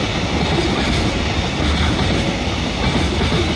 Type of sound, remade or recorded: recorded